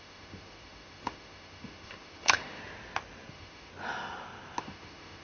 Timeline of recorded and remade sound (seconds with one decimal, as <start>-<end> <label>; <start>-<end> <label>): 0.0-2.6 remade; 2.6-3.3 recorded; 3.3-3.7 remade; 3.7-4.6 recorded; 4.6-5.2 remade